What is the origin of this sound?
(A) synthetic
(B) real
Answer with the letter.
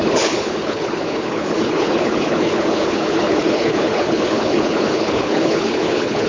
A